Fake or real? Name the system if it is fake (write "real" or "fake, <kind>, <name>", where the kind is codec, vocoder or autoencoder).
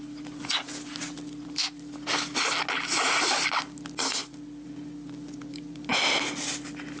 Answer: real